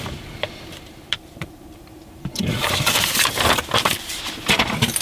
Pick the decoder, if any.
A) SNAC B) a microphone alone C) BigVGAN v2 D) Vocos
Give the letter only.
C